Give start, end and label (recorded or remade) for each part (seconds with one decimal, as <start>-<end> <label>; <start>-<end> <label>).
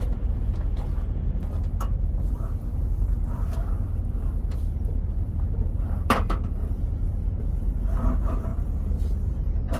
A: 0.0-9.8 recorded